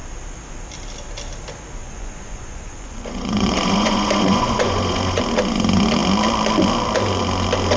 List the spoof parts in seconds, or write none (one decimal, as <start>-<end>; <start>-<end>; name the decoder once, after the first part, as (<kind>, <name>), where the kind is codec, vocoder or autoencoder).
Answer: 1.8-5.2 (vocoder, Vocos)